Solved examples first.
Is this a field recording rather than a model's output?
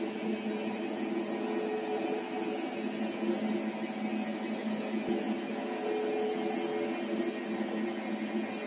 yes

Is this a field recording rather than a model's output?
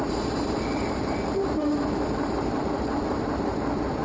no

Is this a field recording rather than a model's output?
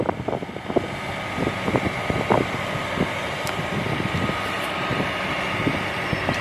yes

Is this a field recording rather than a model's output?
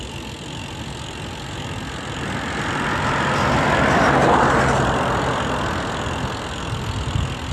yes